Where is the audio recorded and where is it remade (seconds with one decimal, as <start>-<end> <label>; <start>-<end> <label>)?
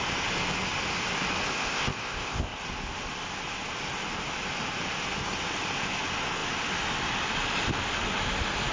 0.0-1.5 recorded; 1.5-2.6 remade; 2.6-8.7 recorded